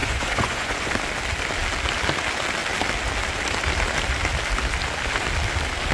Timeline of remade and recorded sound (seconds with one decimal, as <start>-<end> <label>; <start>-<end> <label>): 0.0-0.9 remade; 0.9-5.9 recorded